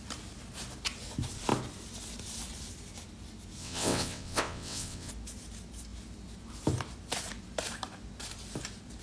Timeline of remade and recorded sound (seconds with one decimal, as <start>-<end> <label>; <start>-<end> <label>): 0.0-3.6 recorded; 3.6-5.1 remade; 5.1-9.0 recorded